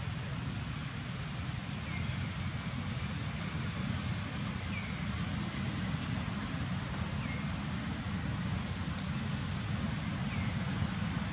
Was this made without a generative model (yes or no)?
yes